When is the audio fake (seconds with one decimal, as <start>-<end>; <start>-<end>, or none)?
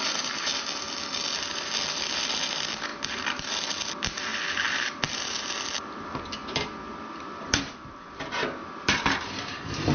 0.0-0.5; 1.9-4.3; 5.0-9.9